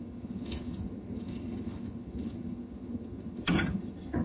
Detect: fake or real fake